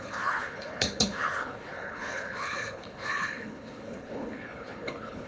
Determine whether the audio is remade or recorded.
remade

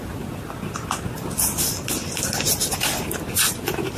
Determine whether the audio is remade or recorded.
recorded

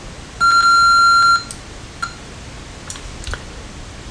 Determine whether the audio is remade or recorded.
recorded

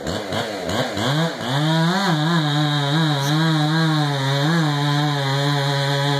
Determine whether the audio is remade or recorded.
recorded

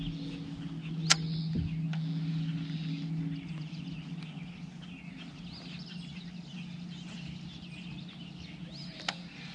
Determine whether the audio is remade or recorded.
recorded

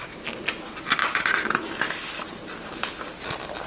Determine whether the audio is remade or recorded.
recorded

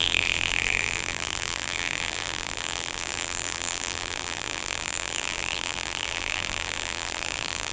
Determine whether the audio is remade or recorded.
remade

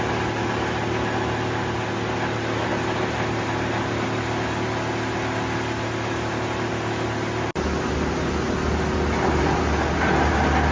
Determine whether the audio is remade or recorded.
recorded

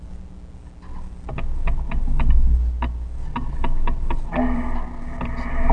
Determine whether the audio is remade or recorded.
recorded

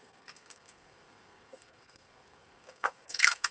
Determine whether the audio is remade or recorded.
remade